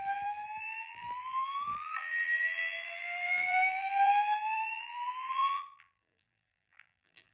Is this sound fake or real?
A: fake